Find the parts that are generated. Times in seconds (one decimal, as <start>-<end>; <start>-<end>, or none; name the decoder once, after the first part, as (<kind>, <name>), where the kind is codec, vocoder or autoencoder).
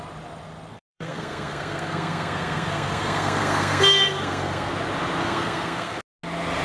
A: 0.7-4.7 (codec, SNAC); 5.2-6.0